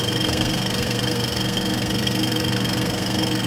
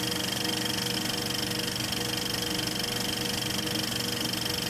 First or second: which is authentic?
second